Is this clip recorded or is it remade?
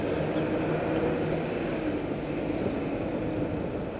recorded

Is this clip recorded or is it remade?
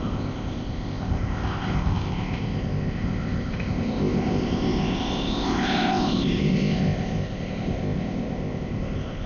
remade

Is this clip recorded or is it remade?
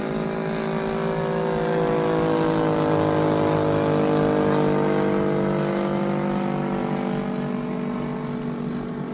recorded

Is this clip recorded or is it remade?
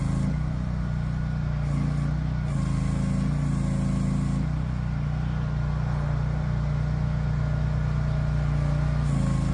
recorded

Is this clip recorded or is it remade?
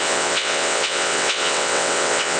remade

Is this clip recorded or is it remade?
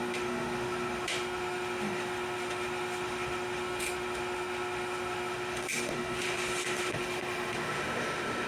remade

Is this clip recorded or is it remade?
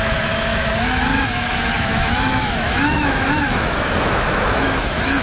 remade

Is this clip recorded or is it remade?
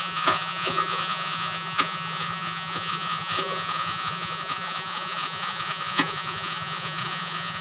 remade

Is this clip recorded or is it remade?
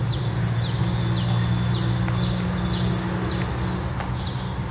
recorded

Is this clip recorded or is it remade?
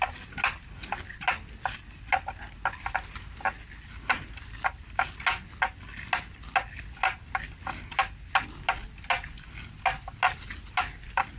recorded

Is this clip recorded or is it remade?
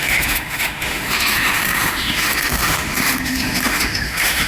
remade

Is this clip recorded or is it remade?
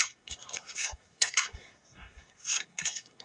remade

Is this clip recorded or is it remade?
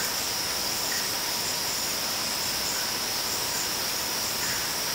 recorded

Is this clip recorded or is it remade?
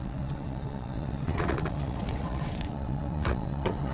remade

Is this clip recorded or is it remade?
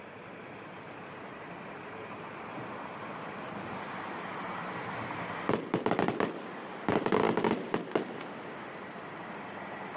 recorded